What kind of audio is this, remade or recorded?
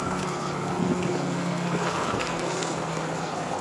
remade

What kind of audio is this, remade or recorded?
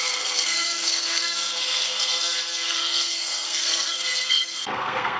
remade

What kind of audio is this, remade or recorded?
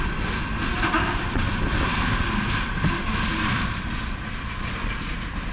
recorded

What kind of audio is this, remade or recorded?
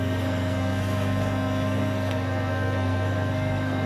remade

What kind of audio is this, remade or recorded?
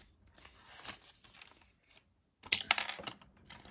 recorded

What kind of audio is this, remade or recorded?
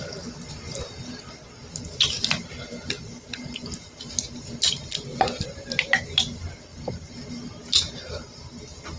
recorded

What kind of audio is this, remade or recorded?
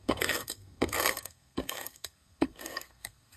remade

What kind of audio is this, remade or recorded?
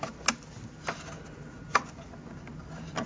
recorded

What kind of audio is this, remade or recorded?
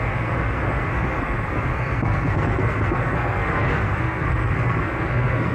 remade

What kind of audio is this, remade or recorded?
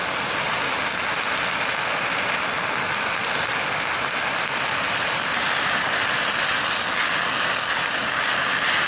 recorded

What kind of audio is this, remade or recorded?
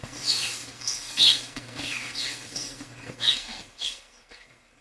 remade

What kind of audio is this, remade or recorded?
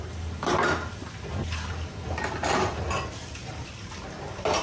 recorded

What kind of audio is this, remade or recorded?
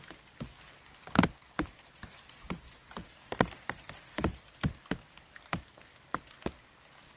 recorded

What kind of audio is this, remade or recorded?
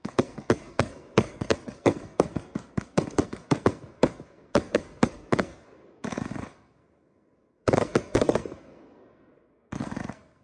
remade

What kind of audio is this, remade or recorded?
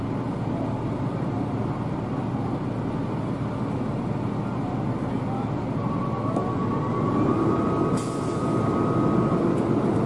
recorded